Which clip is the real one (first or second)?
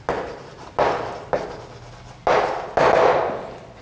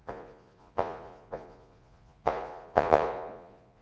first